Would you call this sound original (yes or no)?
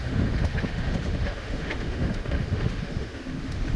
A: no